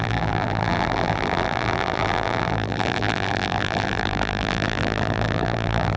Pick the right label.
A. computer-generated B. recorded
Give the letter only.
A